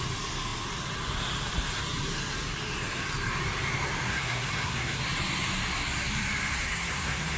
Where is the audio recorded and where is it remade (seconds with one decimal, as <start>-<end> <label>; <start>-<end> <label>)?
0.0-4.1 recorded; 4.1-5.0 remade; 5.0-6.6 recorded; 6.6-7.4 remade